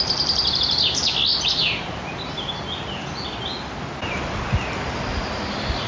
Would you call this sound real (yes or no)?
yes